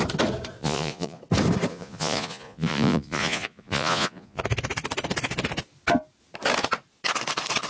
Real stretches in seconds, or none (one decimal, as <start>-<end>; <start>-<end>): 0.0-0.6; 1.2-1.7; 4.4-7.7